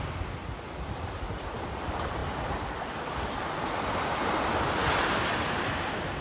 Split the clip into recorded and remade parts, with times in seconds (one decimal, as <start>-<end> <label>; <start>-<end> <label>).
0.0-6.2 recorded